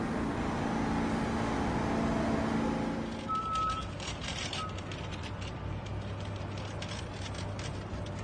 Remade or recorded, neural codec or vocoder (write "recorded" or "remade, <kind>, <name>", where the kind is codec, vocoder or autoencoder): recorded